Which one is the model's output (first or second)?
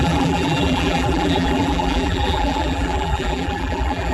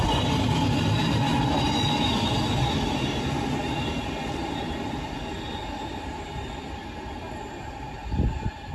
first